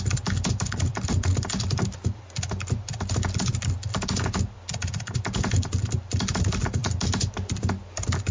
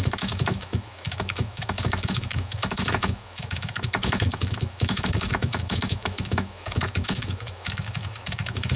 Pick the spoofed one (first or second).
second